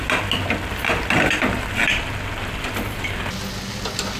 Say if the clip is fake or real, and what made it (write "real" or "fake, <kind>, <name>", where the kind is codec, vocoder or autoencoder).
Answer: real